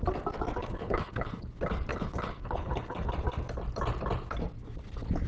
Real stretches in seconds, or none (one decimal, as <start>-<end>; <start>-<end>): 0.0-0.6; 1.4-1.9; 3.1-5.3